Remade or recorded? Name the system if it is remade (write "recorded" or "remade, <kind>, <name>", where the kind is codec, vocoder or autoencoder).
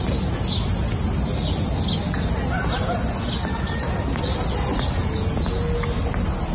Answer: recorded